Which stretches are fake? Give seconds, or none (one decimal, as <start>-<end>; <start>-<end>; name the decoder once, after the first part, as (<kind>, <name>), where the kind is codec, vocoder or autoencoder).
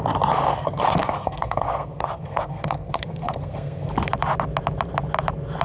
0.5-3.9 (codec, SNAC)